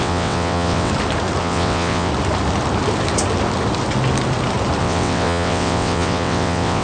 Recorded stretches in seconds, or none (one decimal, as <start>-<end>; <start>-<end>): 0.9-1.4; 2.1-4.8